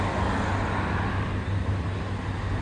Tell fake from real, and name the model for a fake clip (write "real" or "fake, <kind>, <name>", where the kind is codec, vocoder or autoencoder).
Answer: real